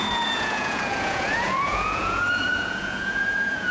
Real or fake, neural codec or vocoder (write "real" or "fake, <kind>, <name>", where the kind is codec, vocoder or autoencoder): fake, vocoder, Vocos